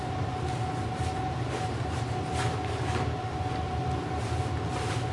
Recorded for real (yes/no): yes